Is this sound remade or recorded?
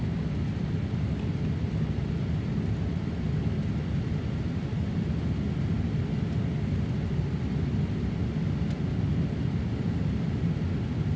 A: recorded